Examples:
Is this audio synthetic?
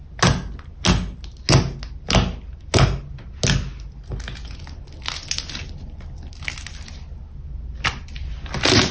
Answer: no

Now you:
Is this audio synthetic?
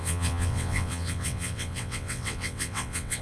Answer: yes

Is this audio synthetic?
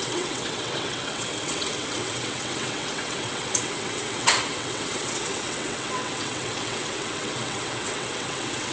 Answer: yes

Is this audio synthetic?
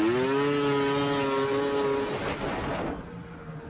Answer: no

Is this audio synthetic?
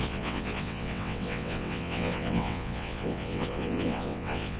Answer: yes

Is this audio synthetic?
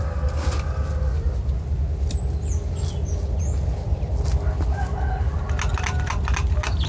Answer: no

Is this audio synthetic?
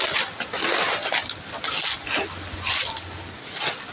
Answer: no